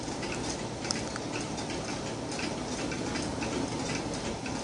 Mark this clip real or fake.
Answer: real